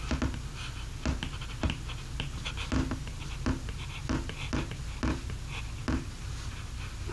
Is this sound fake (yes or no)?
no